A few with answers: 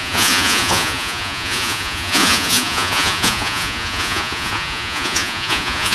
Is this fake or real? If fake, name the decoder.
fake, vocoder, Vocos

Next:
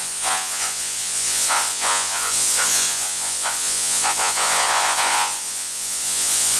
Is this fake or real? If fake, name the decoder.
fake, vocoder, Vocos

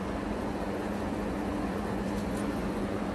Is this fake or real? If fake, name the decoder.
fake, vocoder, Vocos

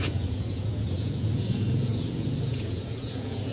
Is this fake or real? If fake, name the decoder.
fake, vocoder, Vocos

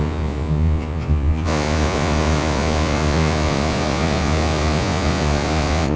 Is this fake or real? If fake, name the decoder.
fake, vocoder, Vocos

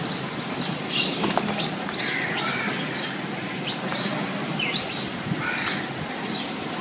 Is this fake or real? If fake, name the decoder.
real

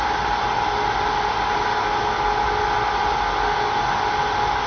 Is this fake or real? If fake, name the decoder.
real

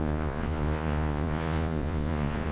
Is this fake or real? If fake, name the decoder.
fake, vocoder, Vocos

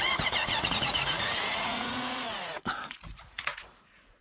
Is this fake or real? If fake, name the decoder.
fake, vocoder, Vocos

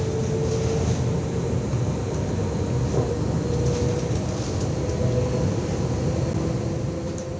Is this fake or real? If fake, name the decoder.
real